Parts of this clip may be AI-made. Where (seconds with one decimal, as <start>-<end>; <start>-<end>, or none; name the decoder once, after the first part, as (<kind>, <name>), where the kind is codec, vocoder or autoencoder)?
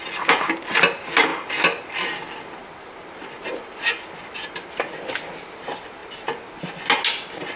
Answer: 1.3-5.4 (vocoder, BigVGAN v2); 6.0-6.7